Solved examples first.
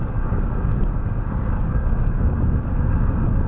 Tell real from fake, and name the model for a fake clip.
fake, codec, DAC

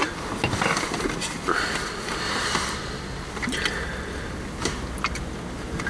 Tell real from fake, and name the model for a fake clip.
real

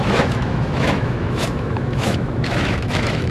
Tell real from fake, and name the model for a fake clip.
fake, autoencoder, DAC-VAE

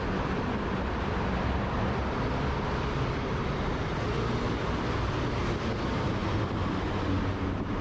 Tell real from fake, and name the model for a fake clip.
real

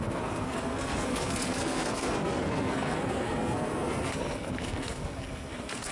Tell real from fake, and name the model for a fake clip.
fake, codec, SNAC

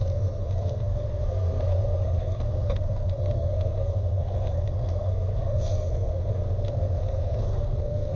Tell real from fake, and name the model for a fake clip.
fake, codec, SNAC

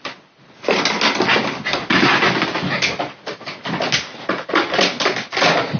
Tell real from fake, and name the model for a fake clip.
real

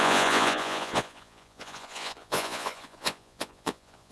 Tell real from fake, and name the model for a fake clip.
fake, vocoder, Vocos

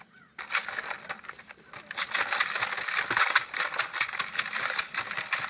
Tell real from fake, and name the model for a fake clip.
real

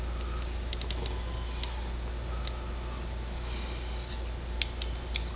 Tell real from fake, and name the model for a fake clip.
real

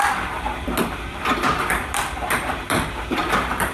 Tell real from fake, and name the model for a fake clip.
fake, vocoder, BigVGAN v2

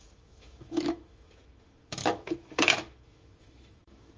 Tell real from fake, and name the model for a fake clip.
fake, autoencoder, DAC-VAE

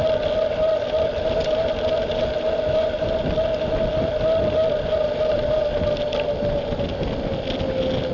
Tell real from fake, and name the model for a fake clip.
real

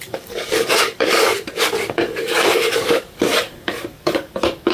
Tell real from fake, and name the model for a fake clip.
fake, codec, DAC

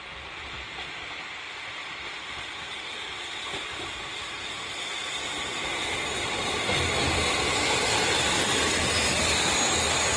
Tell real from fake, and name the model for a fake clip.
real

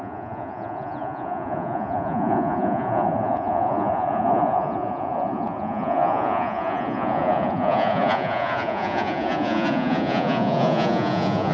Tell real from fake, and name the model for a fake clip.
fake, vocoder, Vocos